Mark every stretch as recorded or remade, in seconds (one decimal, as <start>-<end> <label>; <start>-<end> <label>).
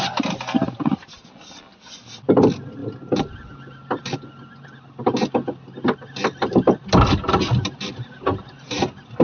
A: 0.0-9.2 recorded